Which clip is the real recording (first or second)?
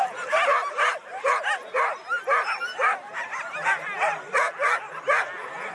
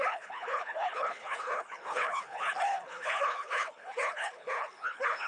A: first